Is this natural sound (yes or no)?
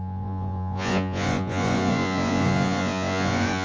no